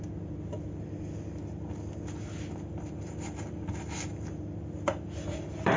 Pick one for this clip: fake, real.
real